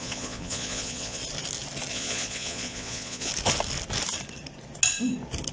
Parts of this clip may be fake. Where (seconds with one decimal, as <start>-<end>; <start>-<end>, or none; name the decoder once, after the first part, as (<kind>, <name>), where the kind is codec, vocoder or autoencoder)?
0.0-1.2 (vocoder, Vocos); 1.9-3.3